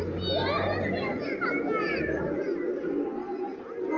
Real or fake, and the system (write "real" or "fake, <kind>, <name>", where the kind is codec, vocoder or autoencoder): real